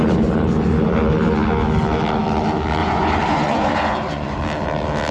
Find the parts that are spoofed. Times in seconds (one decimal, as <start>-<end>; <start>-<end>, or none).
2.8-4.4